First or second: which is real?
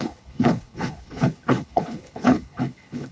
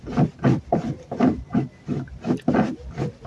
second